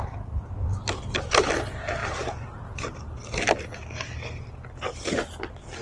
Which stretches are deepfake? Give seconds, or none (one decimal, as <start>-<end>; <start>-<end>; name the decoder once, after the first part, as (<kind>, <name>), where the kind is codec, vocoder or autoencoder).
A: none

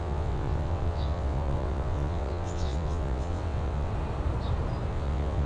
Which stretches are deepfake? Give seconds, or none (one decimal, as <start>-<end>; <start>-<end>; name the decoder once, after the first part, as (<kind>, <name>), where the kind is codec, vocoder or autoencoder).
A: 0.0-3.9 (vocoder, WaveNeXt); 4.9-5.5

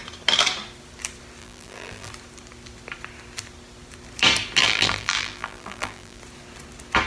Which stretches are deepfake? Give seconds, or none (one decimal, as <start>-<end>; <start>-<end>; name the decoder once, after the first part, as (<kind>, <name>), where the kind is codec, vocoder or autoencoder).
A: 1.4-2.1 (vocoder, BigVGAN v2); 4.6-6.2

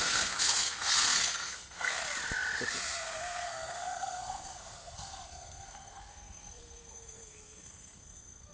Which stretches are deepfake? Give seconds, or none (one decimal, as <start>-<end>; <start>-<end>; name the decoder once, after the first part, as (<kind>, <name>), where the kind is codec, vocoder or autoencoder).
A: 0.0-2.0 (codec, SNAC); 2.7-8.5

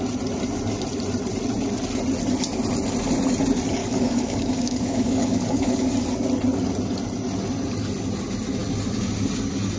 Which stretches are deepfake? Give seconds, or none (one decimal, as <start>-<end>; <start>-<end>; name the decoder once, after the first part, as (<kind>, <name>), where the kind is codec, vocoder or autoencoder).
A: 3.8-5.9 (codec, DAC)

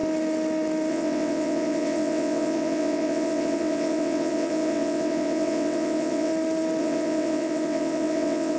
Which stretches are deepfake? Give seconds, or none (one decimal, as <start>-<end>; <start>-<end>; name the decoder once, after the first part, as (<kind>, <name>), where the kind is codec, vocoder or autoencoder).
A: 0.9-6.3 (vocoder, WaveNeXt); 6.8-8.6